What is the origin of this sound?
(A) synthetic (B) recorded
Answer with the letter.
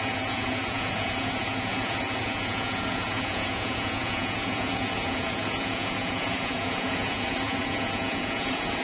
A